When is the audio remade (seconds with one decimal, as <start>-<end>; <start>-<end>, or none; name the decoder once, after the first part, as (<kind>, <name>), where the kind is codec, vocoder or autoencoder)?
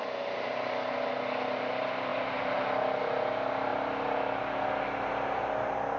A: none